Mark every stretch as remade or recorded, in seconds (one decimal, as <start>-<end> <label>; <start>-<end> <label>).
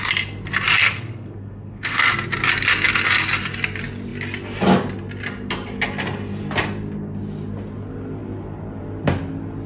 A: 0.0-0.8 recorded; 0.8-2.1 remade; 2.1-9.7 recorded